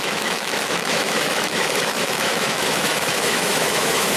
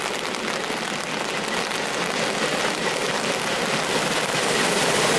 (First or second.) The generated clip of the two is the first